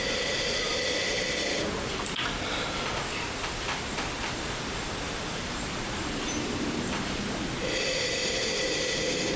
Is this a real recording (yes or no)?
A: yes